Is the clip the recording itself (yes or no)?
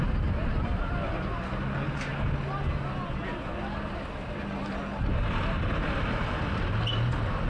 yes